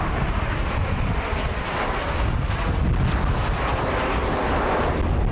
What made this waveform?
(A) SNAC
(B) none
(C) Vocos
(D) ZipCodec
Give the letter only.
B